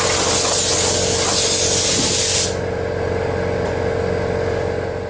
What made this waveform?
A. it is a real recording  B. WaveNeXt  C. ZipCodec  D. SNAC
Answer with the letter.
A